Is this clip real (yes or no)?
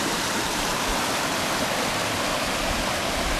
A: yes